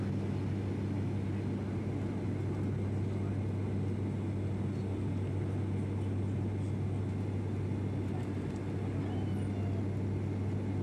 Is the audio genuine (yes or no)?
yes